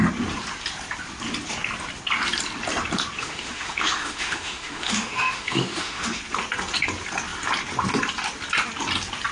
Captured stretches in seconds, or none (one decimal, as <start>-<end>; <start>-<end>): 0.0-3.2; 6.2-9.3